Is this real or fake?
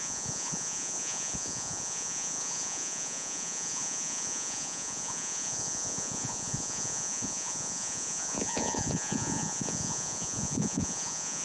fake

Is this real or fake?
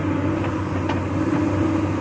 real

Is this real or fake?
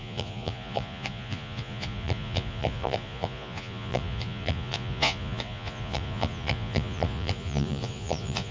fake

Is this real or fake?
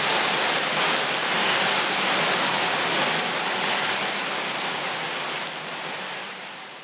real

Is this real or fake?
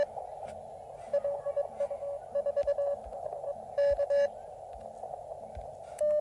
real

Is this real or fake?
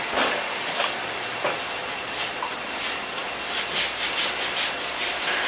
real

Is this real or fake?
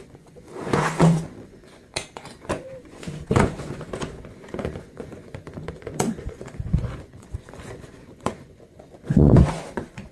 fake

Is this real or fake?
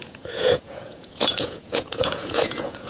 fake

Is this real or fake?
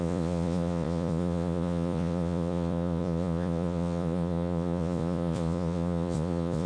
fake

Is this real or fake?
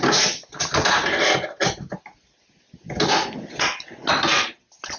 real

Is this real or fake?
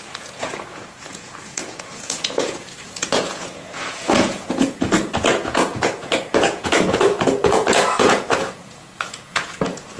fake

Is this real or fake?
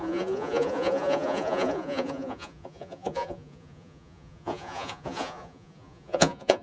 fake